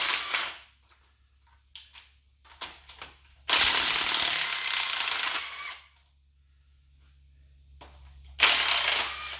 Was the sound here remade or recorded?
recorded